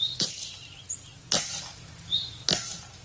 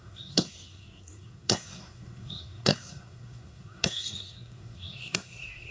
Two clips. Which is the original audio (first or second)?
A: first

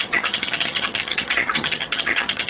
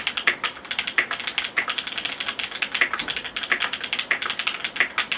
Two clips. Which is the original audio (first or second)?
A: second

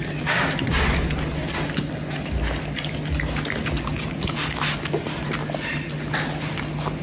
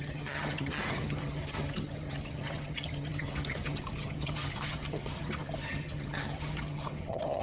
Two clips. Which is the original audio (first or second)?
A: first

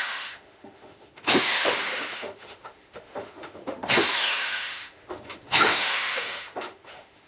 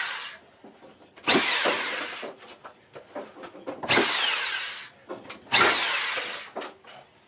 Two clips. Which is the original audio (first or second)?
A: second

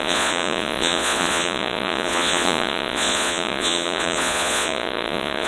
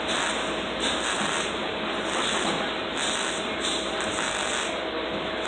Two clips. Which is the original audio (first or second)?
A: second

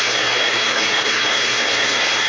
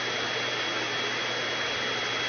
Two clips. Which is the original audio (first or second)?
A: second